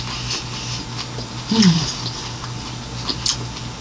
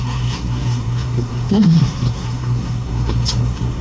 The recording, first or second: first